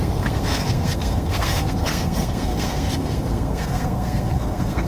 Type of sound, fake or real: fake